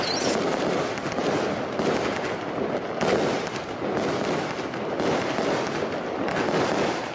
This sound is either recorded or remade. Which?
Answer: recorded